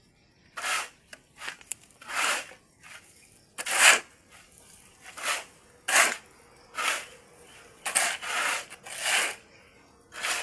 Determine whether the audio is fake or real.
real